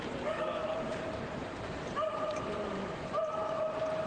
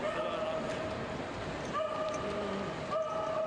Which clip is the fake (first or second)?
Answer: first